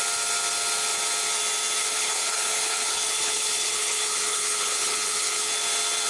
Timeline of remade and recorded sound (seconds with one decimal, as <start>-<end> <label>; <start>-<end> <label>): 0.0-1.8 recorded; 1.8-5.5 remade; 5.5-6.1 recorded